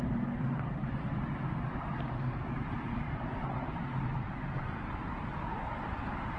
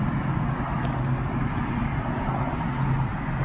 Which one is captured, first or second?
second